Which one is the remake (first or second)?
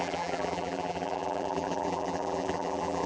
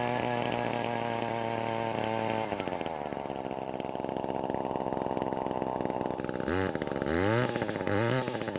first